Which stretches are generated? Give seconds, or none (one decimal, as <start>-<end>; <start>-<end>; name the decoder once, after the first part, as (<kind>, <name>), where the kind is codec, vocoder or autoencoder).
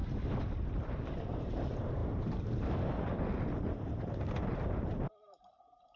1.3-6.0 (vocoder, BigVGAN v2)